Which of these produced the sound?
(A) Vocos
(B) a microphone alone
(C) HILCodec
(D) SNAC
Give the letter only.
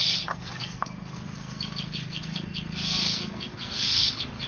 D